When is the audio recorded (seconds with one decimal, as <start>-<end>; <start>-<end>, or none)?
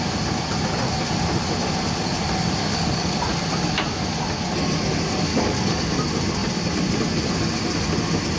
0.0-2.6; 3.2-5.3; 5.8-8.4